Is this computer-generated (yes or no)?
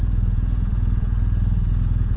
yes